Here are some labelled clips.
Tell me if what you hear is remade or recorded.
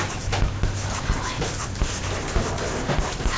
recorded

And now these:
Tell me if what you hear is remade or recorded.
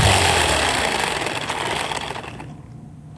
recorded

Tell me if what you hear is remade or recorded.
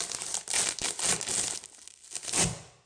recorded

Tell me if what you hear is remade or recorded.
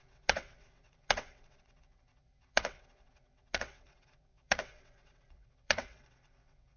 remade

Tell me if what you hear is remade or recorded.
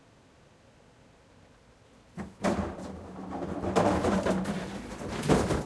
recorded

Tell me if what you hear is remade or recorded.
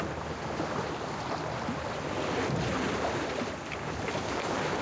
recorded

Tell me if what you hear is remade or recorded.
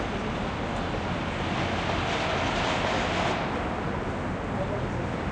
recorded